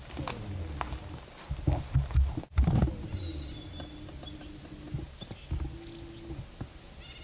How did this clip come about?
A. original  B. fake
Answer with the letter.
A